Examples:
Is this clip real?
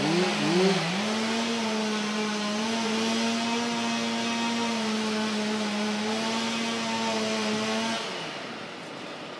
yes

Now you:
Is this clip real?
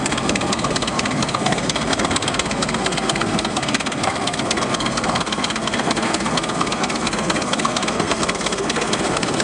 no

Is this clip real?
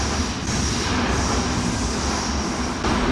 yes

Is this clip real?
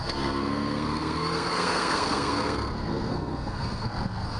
no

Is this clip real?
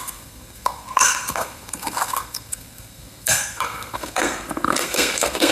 no